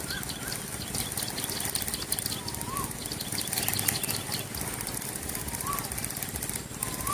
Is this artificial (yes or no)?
no